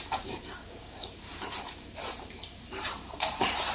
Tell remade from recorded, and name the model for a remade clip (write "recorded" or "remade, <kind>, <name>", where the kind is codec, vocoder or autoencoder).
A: remade, vocoder, BigVGAN v2